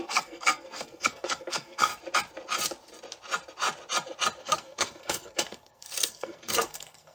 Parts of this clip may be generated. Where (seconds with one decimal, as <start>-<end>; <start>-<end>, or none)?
0.0-1.9; 4.4-7.1

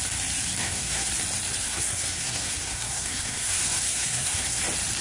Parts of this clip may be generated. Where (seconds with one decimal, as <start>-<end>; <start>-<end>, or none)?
0.6-1.1; 1.6-4.6